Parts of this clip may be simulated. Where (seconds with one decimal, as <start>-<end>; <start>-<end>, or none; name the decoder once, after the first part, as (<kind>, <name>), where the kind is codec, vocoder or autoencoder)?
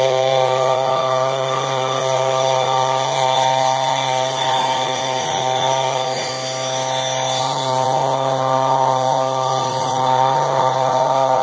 0.0-6.3 (vocoder, Vocos); 7.4-11.4